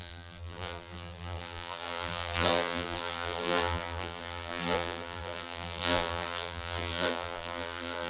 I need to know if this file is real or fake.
fake